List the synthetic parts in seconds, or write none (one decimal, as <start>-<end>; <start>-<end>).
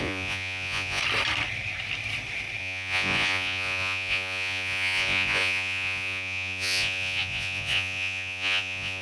0.0-1.0; 2.6-9.0